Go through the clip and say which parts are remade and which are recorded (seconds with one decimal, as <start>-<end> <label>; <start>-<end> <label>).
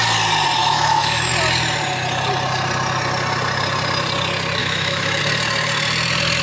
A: 0.0-0.6 recorded; 0.6-1.3 remade; 1.3-4.6 recorded; 4.6-5.2 remade; 5.2-6.4 recorded